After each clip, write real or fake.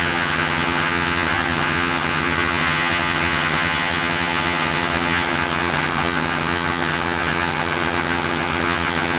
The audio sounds fake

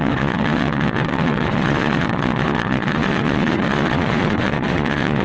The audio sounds fake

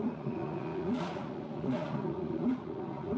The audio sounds fake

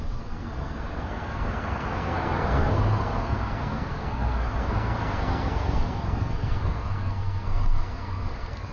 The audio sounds fake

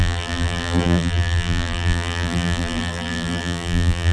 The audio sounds fake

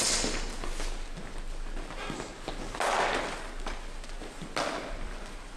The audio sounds real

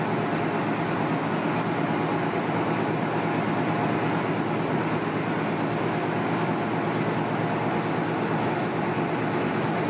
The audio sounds real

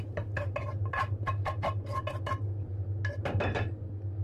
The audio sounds real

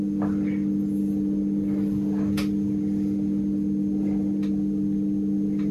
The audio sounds real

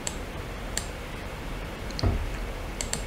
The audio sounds fake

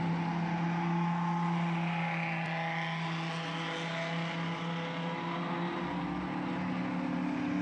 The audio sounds real